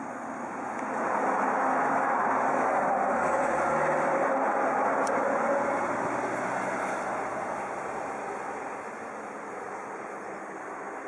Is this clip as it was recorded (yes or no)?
yes